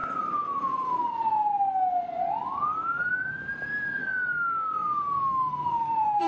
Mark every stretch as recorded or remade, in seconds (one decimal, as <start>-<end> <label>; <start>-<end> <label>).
0.0-1.1 remade; 1.1-2.5 recorded; 2.5-3.3 remade; 3.3-4.0 recorded; 4.0-6.3 remade

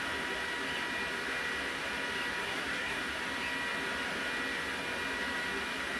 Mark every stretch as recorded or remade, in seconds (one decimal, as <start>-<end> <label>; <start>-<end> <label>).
0.0-2.4 recorded; 2.4-3.0 remade; 3.0-6.0 recorded

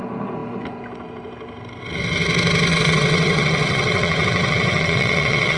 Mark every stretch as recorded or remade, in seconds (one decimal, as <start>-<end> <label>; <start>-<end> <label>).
0.0-2.7 recorded; 2.7-5.6 remade

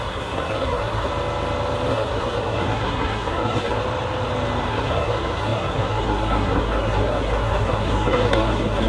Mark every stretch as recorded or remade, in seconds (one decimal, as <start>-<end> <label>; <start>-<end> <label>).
0.0-1.1 remade; 1.1-1.9 recorded; 1.9-3.8 remade; 3.8-4.7 recorded; 4.7-8.9 remade

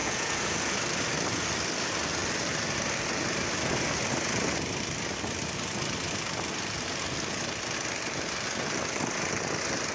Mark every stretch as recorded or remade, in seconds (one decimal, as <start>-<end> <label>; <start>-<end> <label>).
0.0-0.7 remade; 0.7-9.9 recorded

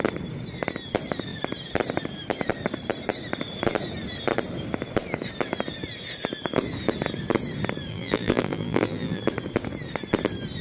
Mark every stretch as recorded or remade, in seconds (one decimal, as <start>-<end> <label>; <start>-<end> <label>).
0.0-7.9 recorded; 7.9-9.2 remade; 9.2-10.6 recorded